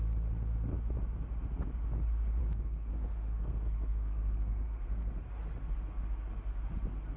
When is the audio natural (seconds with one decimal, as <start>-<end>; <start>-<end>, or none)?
0.0-2.4; 5.2-7.2